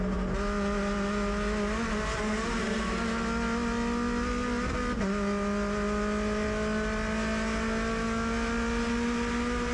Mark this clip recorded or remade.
recorded